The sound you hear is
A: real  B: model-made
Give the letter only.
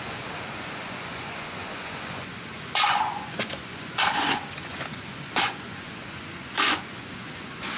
B